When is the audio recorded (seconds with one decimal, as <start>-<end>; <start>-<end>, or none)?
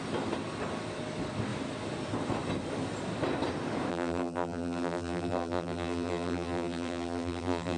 0.0-3.9